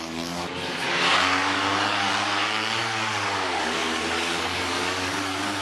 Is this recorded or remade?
remade